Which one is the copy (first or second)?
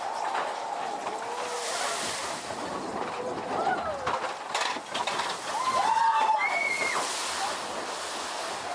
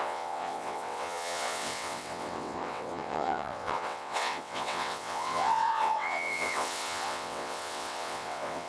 second